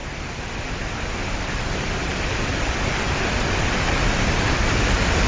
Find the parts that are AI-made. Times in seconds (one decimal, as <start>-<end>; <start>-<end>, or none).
0.0-0.7; 1.2-4.4